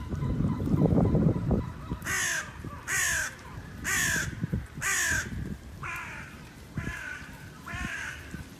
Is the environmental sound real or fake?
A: fake